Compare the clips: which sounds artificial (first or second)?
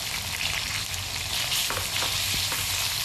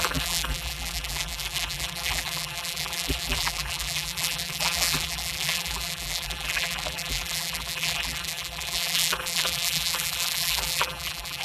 second